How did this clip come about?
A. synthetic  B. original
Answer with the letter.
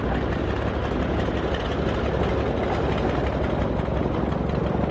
B